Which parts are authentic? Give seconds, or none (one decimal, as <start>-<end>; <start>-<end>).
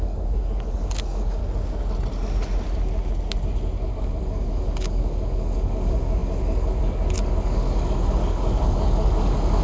1.4-3.9